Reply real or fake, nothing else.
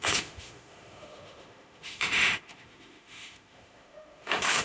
fake